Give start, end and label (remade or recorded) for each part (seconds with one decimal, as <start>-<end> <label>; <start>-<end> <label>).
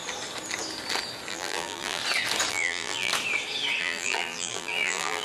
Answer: 0.0-1.3 recorded; 1.3-2.0 remade; 2.0-2.5 recorded; 2.5-3.1 remade; 3.1-3.8 recorded; 3.8-5.2 remade